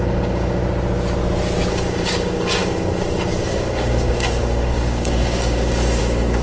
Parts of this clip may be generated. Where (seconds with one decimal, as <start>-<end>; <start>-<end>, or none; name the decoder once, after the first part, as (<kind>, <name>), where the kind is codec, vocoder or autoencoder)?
0.0-0.6 (codec, DAC); 1.7-6.4